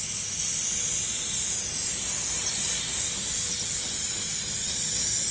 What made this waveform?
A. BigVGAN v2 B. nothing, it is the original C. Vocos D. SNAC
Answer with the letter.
B